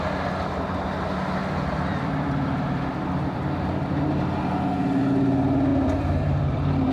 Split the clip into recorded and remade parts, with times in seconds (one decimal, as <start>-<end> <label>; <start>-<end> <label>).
0.0-1.4 recorded; 1.4-3.9 remade; 3.9-5.7 recorded; 5.7-6.9 remade